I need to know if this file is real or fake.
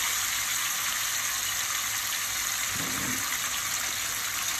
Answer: real